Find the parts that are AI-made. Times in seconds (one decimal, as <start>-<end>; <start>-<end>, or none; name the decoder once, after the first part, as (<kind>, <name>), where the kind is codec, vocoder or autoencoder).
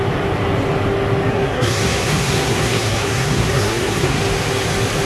1.3-4.2 (codec, SNAC)